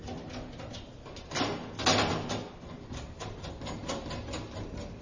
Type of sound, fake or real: real